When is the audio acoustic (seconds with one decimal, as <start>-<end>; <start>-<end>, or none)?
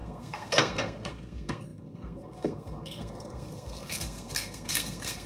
none